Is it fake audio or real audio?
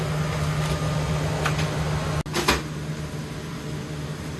real